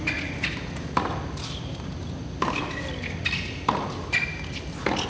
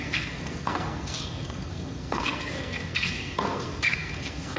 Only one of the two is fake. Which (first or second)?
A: second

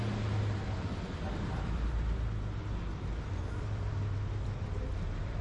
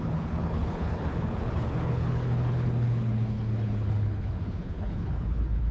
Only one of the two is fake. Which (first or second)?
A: second